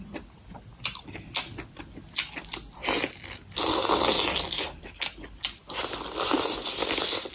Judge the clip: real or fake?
real